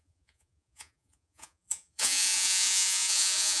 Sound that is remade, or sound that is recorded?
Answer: remade